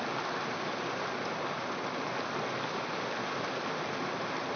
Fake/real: real